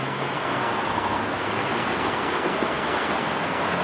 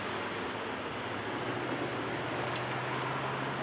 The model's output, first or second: first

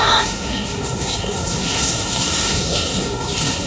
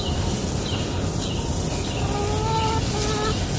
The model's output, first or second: first